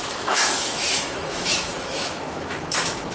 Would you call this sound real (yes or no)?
no